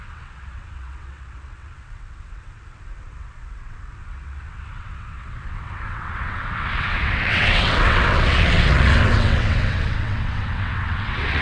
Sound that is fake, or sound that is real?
fake